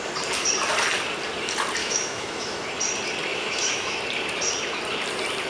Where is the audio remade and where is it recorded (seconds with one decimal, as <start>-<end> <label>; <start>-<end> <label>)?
0.0-1.8 recorded; 1.8-2.6 remade; 2.6-3.3 recorded; 3.3-4.0 remade; 4.0-5.5 recorded